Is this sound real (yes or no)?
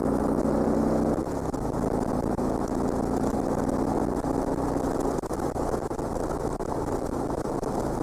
yes